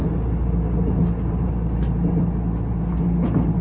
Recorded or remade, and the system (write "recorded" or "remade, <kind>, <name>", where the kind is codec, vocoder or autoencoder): recorded